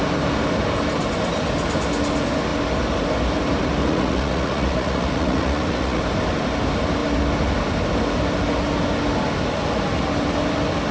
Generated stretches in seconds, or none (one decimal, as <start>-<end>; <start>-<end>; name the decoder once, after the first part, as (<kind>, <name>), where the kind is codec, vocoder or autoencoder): 3.8-6.0 (vocoder, Vocos)